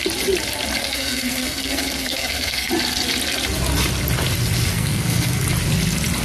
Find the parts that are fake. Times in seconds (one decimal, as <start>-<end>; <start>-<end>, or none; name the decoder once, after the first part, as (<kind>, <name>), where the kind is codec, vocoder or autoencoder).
0.8-2.7 (codec, SNAC); 4.7-5.4